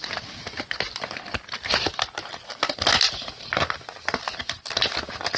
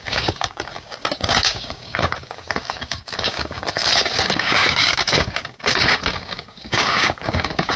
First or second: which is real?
first